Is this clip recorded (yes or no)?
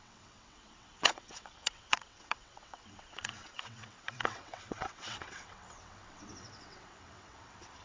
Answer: no